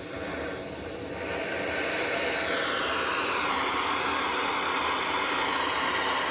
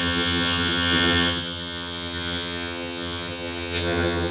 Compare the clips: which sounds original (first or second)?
first